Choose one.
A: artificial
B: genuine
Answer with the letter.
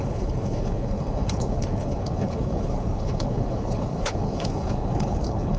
A